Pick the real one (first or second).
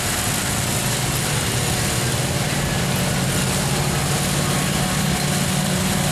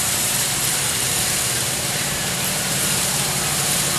first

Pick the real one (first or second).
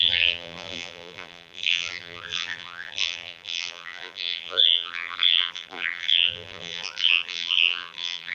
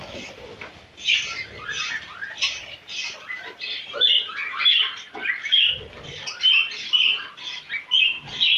second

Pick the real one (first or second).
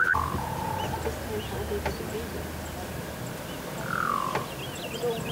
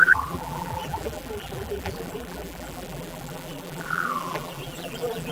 first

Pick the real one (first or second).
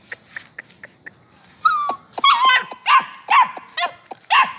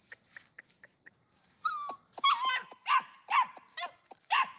first